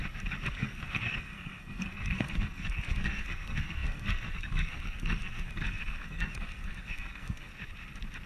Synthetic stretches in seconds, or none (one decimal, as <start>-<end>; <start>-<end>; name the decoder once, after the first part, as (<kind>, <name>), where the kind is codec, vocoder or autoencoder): 0.5-7.5 (codec, SNAC)